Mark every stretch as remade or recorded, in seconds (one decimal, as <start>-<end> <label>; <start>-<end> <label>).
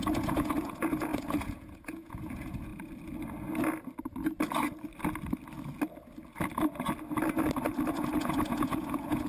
0.0-2.7 remade; 2.7-7.9 recorded; 7.9-9.3 remade